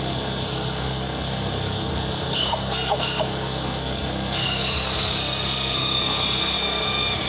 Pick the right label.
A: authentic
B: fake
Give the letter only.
B